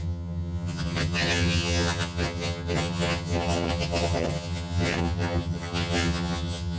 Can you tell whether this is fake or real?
fake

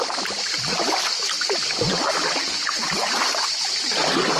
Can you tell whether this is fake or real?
real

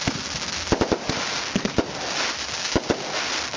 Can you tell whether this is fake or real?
real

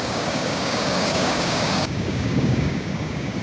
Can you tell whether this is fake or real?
fake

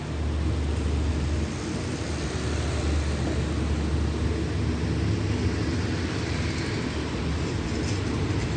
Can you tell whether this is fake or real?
real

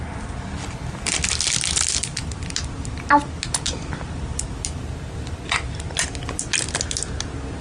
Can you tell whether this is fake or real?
real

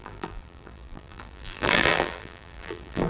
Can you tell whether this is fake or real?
fake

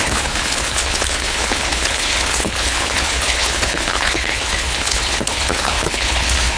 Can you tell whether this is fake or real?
fake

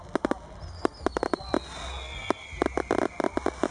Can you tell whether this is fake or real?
real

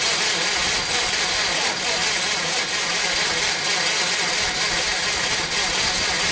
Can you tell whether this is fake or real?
real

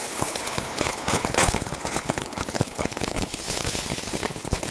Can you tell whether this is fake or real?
fake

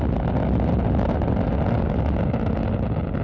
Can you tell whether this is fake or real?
real